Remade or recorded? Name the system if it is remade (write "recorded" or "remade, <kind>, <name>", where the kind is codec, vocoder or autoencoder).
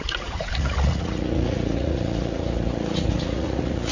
remade, vocoder, Vocos